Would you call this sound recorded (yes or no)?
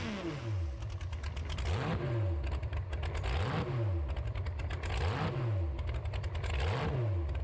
yes